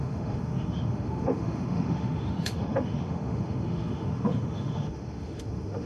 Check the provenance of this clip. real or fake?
fake